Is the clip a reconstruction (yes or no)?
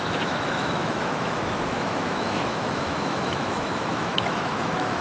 yes